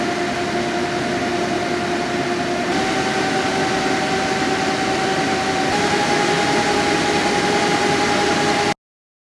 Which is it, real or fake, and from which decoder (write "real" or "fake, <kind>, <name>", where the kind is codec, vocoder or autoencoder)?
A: real